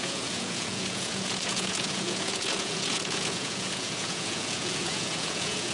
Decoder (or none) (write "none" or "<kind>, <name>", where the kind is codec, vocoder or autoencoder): vocoder, Vocos